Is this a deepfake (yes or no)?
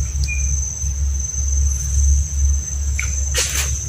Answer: no